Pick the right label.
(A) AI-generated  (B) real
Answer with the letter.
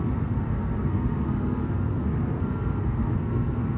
A